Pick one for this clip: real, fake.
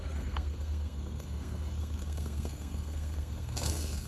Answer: fake